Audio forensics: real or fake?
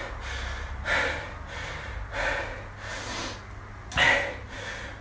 real